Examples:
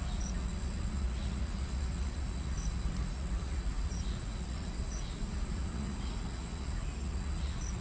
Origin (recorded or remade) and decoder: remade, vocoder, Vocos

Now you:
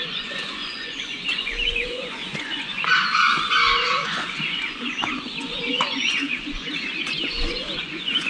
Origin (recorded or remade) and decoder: remade, vocoder, Vocos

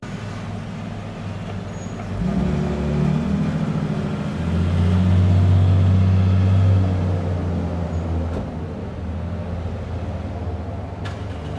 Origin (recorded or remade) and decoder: recorded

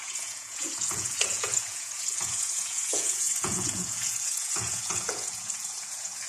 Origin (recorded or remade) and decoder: remade, vocoder, Vocos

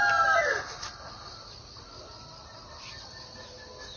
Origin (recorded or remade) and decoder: recorded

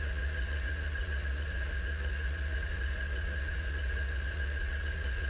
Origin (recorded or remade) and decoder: remade, vocoder, Vocos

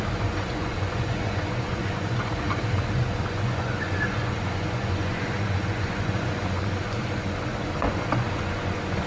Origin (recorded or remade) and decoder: remade, vocoder, Vocos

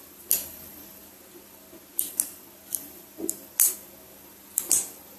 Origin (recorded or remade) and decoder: recorded